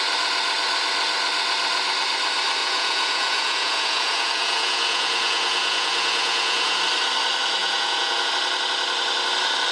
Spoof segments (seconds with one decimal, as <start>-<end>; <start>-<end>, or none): 2.6-6.8; 7.6-8.3